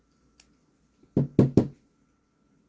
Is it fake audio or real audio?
real